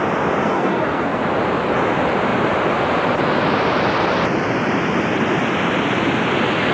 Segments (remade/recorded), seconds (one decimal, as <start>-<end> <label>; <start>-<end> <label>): 0.0-0.4 recorded; 0.4-1.2 remade; 1.2-6.7 recorded